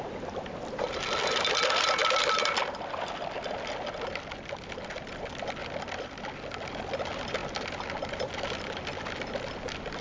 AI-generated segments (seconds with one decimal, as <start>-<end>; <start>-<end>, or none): none